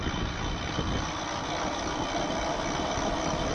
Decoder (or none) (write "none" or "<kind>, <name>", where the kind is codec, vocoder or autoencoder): none